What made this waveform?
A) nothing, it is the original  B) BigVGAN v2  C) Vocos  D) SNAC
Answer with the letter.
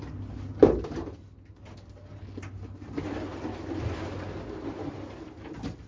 A